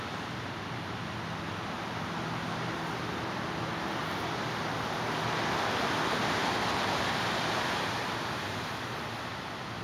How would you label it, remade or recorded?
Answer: recorded